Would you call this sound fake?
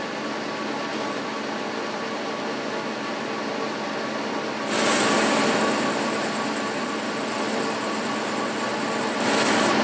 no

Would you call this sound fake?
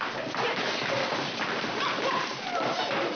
no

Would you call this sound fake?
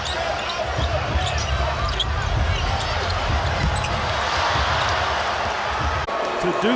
no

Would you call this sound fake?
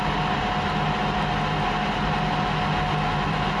no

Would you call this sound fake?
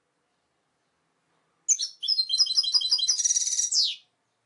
no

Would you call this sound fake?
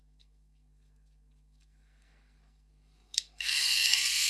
yes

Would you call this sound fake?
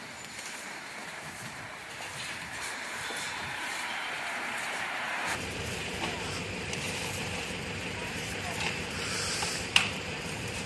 yes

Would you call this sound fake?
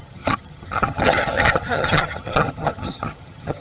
yes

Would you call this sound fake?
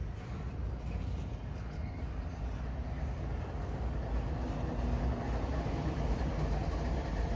no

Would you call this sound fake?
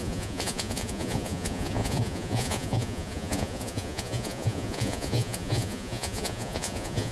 yes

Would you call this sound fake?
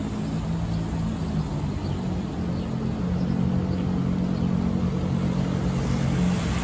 no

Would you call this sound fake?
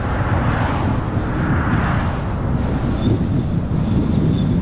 no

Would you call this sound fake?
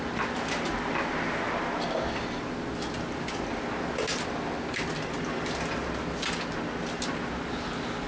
no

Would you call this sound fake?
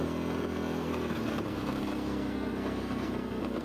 yes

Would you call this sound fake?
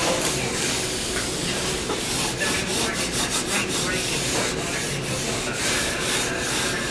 no